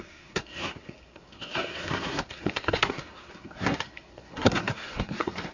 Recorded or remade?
remade